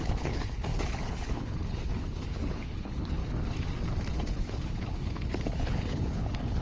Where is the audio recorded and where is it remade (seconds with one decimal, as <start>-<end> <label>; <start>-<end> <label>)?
0.0-3.2 remade; 3.2-4.1 recorded; 4.1-6.6 remade